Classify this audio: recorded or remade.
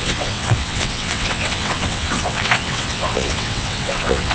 remade